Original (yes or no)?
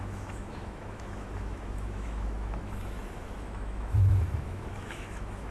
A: no